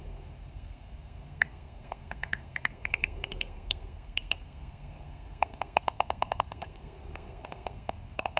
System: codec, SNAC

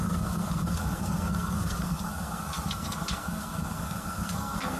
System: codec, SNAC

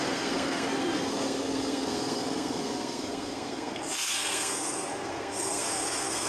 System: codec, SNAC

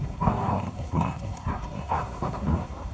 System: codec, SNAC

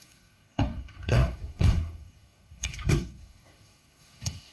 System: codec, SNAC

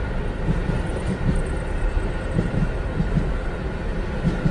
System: none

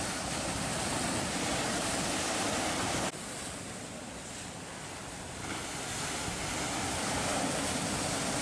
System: none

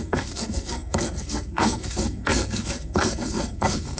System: codec, SNAC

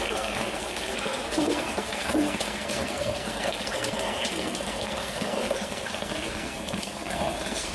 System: codec, SNAC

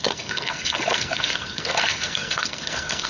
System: codec, SNAC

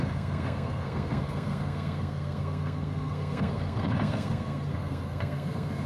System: codec, SNAC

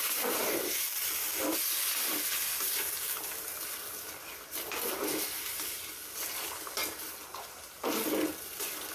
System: none